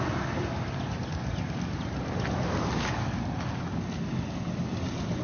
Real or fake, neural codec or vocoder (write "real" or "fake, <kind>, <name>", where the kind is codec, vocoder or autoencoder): real